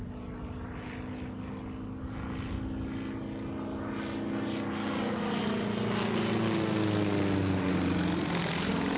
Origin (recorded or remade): recorded